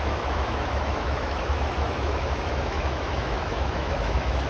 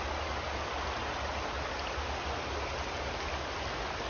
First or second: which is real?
second